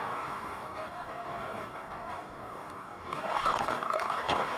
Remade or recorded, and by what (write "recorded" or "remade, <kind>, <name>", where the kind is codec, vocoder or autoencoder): remade, codec, DAC